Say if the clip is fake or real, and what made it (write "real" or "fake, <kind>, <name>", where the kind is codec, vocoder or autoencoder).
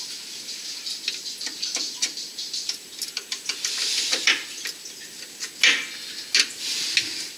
real